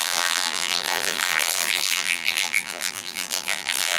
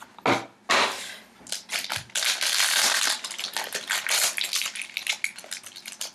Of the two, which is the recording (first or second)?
second